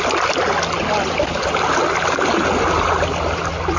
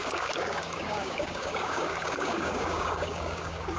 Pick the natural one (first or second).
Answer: first